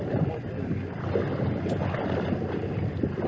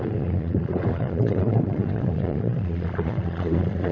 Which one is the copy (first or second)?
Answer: second